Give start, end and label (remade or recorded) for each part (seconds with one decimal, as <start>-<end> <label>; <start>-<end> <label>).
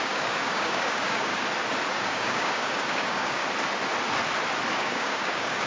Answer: 0.0-1.3 remade; 1.3-1.9 recorded; 1.9-3.4 remade; 3.4-4.7 recorded; 4.7-5.7 remade